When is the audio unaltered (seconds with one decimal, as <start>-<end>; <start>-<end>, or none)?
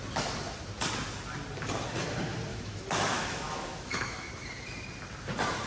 0.0-2.5; 4.3-5.7